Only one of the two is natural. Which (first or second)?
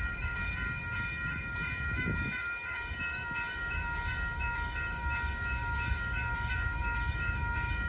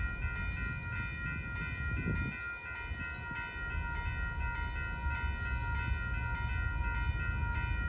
second